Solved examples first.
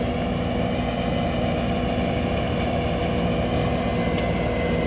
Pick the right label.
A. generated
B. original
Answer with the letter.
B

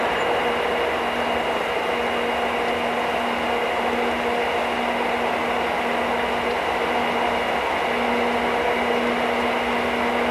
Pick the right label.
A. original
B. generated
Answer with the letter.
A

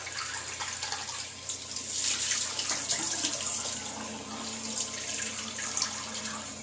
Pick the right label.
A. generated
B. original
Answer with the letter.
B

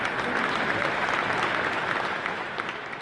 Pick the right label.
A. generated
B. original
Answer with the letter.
B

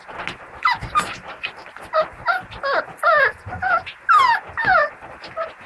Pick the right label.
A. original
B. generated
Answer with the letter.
A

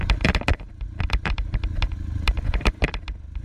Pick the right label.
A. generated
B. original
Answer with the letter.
B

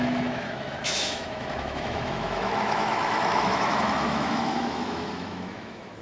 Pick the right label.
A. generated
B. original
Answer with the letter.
A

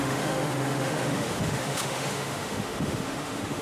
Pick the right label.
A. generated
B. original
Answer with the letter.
A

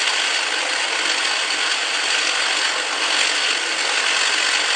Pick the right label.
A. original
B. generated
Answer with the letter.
A